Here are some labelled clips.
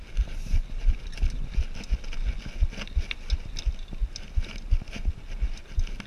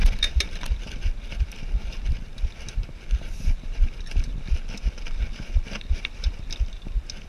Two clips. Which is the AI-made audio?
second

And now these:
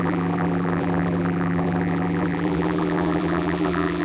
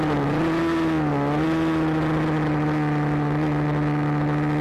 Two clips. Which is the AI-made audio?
first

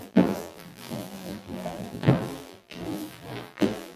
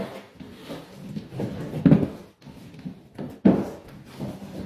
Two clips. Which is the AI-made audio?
first